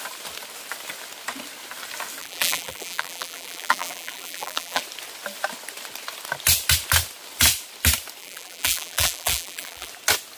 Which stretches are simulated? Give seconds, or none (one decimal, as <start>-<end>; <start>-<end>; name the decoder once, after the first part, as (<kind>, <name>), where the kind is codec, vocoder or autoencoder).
2.2-4.8 (vocoder, BigVGAN v2); 8.2-9.9

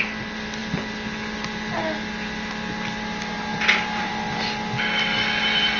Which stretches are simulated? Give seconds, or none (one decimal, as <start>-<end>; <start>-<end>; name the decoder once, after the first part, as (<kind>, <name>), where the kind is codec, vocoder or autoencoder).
3.5-4.1 (vocoder, BigVGAN v2)

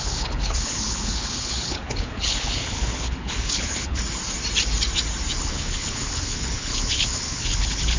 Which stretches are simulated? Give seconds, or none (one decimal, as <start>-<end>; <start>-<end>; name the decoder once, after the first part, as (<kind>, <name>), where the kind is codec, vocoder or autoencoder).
0.0-4.0 (codec, HILCodec); 5.4-8.0

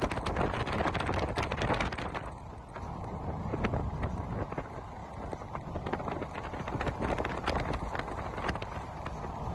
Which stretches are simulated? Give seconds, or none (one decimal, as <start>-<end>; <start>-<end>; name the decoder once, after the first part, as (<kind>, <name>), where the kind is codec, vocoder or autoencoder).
3.5-4.5 (vocoder, BigVGAN v2)

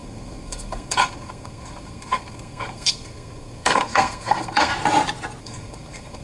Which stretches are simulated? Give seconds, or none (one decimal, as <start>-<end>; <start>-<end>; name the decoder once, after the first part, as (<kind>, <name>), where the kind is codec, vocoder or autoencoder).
0.0-4.7 (codec, SNAC); 5.4-6.2